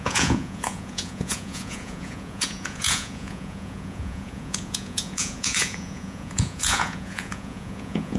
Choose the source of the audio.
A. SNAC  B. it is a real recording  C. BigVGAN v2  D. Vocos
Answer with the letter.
D